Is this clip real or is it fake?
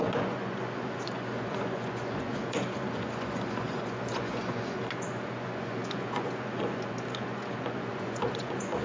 fake